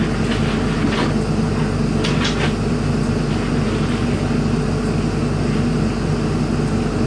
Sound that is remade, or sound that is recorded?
recorded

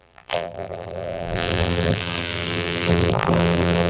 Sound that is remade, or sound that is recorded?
remade